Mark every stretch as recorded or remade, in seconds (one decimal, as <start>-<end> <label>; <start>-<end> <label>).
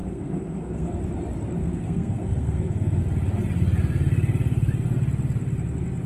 0.0-0.9 remade; 0.9-1.6 recorded; 1.6-3.0 remade; 3.0-6.1 recorded